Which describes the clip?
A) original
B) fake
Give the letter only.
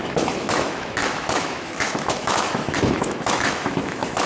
B